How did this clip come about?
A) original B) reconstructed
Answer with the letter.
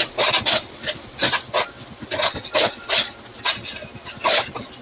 A